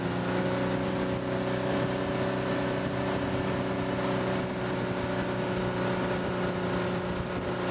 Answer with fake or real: real